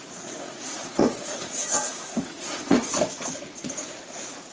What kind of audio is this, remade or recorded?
remade